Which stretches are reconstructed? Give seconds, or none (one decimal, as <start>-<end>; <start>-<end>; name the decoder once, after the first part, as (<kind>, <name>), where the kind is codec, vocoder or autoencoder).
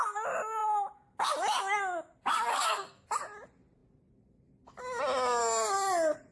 2.5-3.1 (codec, SNAC)